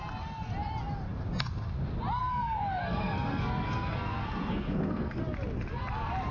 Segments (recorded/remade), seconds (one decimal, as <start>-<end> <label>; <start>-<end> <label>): 0.0-2.2 recorded; 2.2-5.2 remade; 5.2-6.3 recorded